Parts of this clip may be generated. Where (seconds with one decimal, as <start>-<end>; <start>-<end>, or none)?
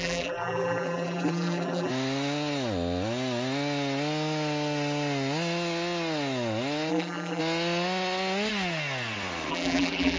0.0-1.9; 6.9-7.4; 9.5-10.2